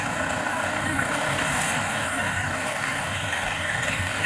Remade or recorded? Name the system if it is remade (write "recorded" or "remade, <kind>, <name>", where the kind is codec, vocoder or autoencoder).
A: remade, codec, DAC